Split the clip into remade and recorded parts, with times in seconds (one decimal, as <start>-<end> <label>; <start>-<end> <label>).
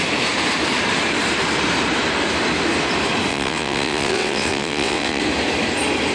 0.0-3.3 recorded; 3.3-5.2 remade; 5.2-6.1 recorded